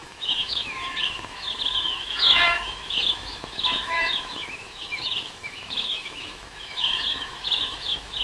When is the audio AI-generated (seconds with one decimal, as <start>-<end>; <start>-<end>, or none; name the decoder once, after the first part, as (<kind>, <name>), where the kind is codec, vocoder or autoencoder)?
0.0-8.2 (autoencoder, DAC-VAE)